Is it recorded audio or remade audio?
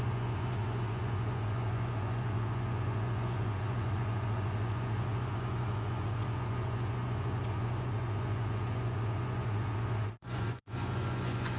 remade